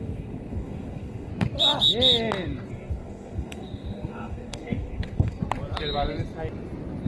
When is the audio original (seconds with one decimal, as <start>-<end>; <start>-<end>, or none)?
1.3-2.7; 5.4-7.1